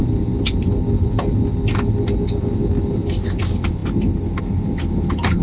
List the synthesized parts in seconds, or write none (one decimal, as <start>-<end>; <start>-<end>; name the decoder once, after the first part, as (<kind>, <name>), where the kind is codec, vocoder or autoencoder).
0.0-1.2 (vocoder, BigVGAN v2); 2.6-3.4